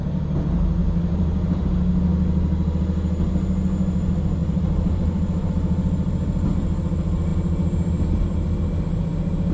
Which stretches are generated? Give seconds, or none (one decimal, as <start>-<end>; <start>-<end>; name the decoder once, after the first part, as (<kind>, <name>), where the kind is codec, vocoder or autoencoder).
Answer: 0.8-1.6 (vocoder, BigVGAN v2); 4.4-5.5